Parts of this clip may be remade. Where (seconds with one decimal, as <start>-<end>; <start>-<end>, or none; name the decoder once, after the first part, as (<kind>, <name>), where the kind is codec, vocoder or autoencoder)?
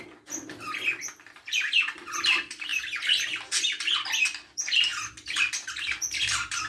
0.0-2.7 (vocoder, BigVGAN v2); 3.6-4.9; 6.0-6.7